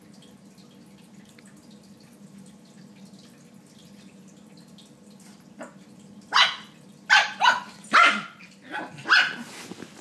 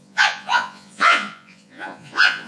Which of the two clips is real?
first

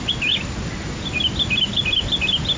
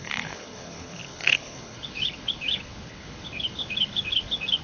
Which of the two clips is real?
first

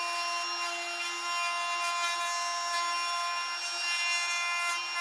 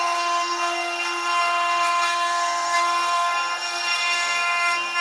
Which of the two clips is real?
first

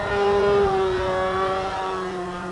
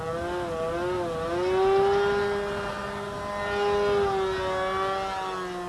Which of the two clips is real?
second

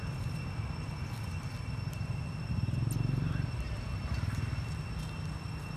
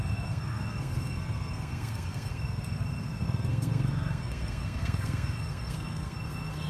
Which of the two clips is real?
first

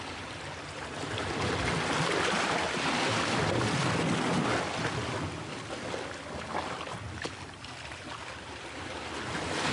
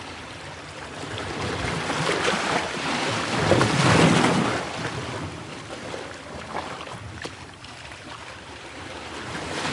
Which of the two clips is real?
first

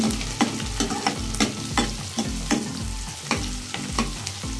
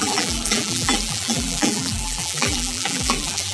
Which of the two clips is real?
first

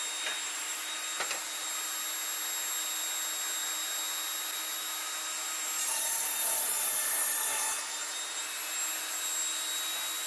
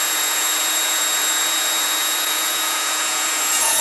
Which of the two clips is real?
first